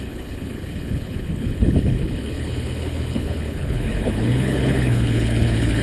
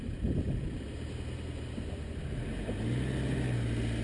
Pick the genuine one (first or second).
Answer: second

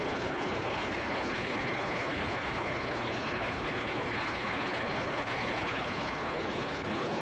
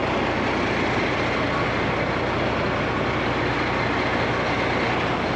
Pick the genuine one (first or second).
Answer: second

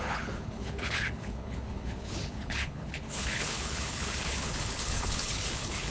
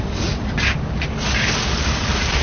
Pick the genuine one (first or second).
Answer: second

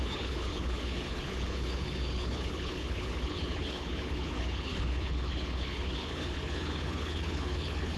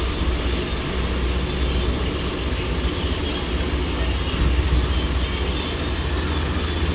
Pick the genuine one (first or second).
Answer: second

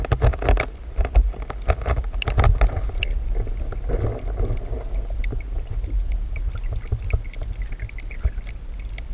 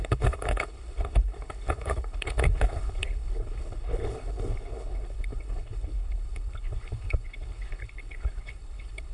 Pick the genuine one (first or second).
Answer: first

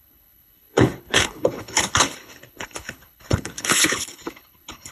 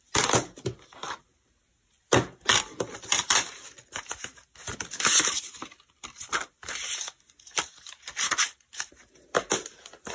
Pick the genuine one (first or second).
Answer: second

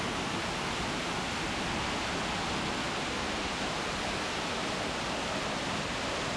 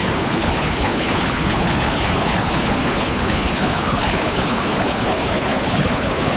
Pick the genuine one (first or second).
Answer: first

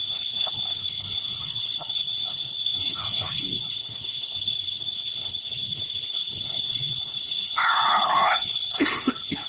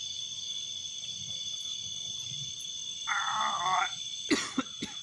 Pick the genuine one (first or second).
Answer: second